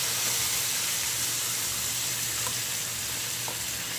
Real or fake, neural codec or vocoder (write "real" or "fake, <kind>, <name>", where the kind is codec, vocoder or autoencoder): fake, vocoder, BigVGAN v2